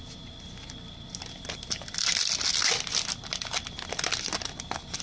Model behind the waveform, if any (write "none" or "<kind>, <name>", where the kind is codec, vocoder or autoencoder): none